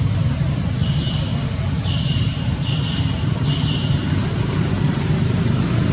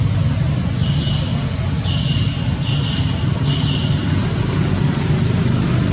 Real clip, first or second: second